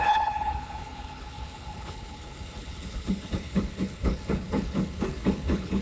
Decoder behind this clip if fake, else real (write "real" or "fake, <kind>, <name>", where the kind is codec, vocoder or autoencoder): fake, codec, HILCodec